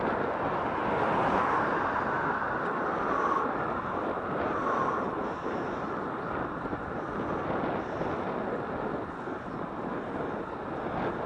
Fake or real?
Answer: real